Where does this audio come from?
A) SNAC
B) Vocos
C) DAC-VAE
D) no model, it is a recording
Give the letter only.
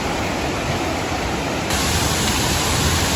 D